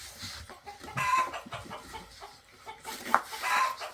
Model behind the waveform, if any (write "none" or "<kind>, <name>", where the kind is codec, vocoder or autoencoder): vocoder, BigVGAN v2